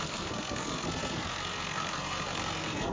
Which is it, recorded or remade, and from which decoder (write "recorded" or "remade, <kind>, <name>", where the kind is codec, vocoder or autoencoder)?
remade, codec, SNAC